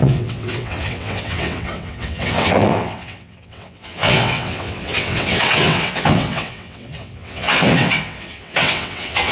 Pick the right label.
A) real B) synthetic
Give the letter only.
B